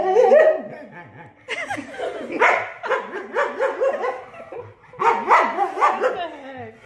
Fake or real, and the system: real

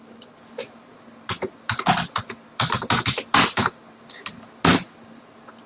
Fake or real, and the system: real